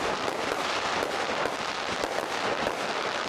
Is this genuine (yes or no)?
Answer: yes